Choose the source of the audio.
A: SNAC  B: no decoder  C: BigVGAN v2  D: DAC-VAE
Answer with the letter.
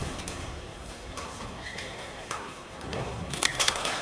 A